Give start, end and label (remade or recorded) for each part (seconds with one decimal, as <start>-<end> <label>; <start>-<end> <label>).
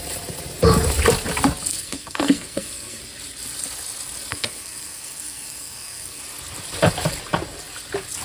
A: 0.0-1.7 recorded; 1.7-3.0 remade; 3.0-4.3 recorded; 4.3-6.2 remade; 6.2-8.2 recorded